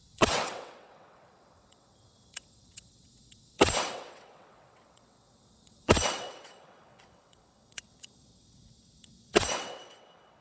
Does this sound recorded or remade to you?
remade